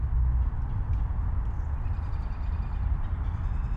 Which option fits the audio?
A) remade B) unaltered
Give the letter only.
B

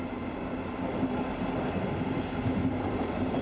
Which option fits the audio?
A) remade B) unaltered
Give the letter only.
B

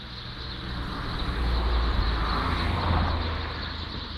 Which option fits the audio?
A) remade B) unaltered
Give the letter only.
B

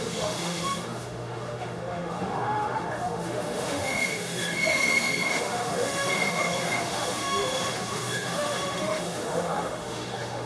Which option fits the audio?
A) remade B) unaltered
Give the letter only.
A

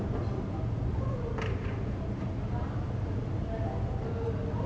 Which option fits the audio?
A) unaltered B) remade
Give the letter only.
A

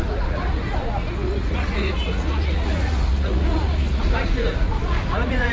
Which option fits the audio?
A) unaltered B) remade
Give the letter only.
B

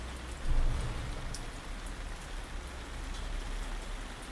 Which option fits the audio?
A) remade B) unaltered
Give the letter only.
B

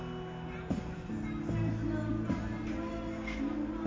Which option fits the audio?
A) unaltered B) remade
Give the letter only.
A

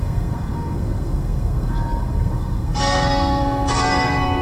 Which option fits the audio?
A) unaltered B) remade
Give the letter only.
B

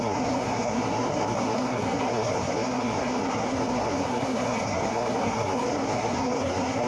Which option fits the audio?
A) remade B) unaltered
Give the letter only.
A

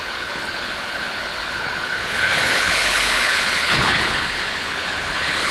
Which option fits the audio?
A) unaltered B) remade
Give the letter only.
B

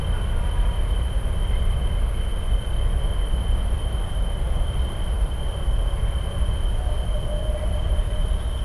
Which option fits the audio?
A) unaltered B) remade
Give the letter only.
A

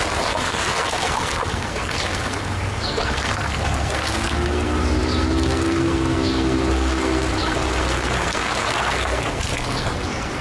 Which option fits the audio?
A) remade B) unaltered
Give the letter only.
A